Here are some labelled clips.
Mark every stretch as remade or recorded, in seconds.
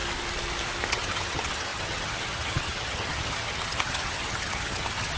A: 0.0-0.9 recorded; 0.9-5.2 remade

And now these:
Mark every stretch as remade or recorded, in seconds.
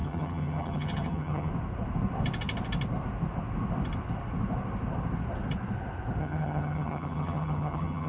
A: 0.0-1.5 remade; 1.5-6.2 recorded; 6.2-8.1 remade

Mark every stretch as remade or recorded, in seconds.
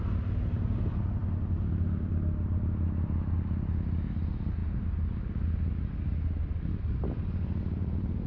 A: 0.0-8.3 recorded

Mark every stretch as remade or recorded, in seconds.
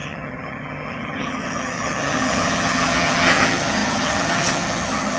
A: 0.0-5.2 remade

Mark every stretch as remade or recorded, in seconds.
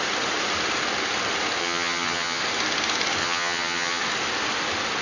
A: 0.0-1.6 recorded; 1.6-2.4 remade; 2.4-3.2 recorded; 3.2-4.0 remade; 4.0-5.0 recorded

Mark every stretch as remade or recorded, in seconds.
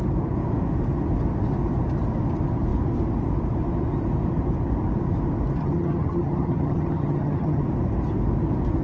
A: 0.0-5.6 recorded; 5.6-7.6 remade; 7.6-8.8 recorded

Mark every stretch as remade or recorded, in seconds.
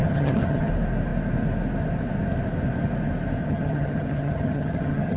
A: 0.0-0.7 remade; 0.7-3.4 recorded; 3.4-5.2 remade